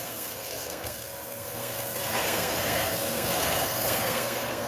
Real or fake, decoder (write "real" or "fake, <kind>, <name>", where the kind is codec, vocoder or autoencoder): fake, codec, SNAC